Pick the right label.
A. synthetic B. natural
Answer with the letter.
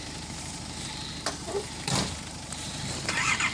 A